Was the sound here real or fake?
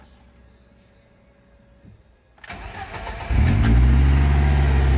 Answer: real